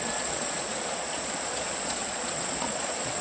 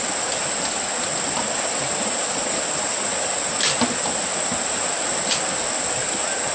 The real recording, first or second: second